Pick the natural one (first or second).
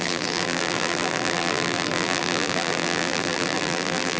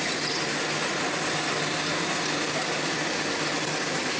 second